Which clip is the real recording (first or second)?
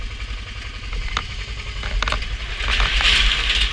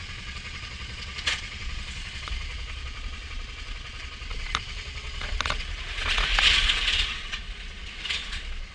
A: first